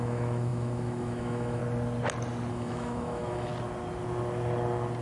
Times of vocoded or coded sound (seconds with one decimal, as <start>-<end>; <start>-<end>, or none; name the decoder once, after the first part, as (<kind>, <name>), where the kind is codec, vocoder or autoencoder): 0.0-1.6 (autoencoder, DAC-VAE); 2.5-3.5

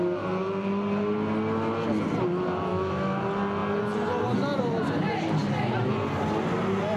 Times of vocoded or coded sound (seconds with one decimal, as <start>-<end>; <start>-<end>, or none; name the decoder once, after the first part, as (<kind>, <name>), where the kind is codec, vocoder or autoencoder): 2.7-3.2 (autoencoder, DAC-VAE)